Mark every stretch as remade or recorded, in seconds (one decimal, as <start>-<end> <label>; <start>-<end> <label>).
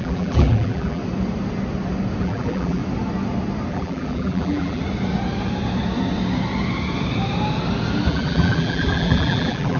0.0-1.0 remade; 1.0-2.2 recorded; 2.2-2.8 remade; 2.8-3.7 recorded; 3.7-4.8 remade; 4.8-8.1 recorded; 8.1-9.8 remade